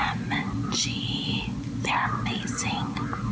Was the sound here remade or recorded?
recorded